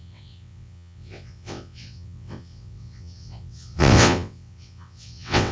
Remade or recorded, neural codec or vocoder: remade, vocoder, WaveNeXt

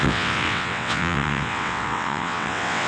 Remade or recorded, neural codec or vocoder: remade, vocoder, WaveNeXt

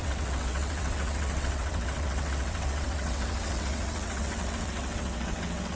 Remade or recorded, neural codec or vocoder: remade, vocoder, WaveNeXt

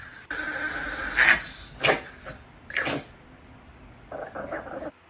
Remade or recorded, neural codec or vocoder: recorded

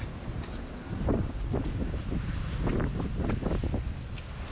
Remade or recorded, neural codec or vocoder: recorded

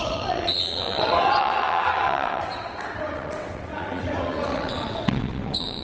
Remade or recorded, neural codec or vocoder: remade, vocoder, WaveNeXt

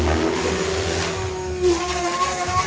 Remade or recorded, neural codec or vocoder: recorded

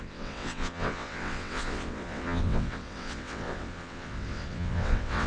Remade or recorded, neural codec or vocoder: remade, vocoder, WaveNeXt